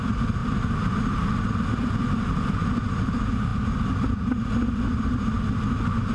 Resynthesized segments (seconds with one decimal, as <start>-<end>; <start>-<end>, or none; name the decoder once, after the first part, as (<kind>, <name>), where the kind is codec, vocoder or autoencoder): none